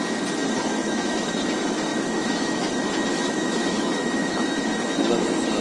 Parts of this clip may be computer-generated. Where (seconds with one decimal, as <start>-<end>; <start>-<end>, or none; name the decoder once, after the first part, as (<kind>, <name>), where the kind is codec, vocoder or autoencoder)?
0.8-1.3 (autoencoder, DAC-VAE); 1.9-2.7; 3.1-4.7